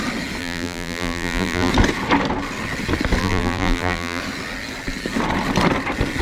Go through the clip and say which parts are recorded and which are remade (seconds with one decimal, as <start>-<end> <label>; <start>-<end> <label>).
0.0-0.4 recorded; 0.4-1.7 remade; 1.7-3.2 recorded; 3.2-4.2 remade; 4.2-6.2 recorded